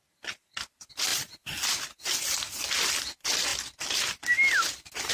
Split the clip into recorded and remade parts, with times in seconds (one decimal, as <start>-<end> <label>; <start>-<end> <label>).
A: 0.0-5.1 recorded